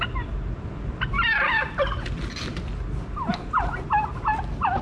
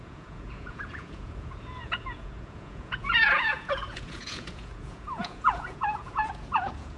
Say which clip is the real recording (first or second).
first